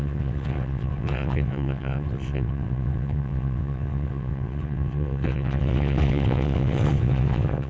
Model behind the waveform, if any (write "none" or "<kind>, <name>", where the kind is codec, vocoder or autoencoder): vocoder, WaveNeXt